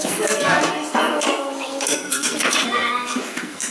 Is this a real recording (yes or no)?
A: no